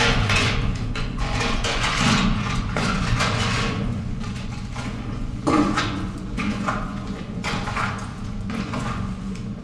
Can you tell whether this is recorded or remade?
remade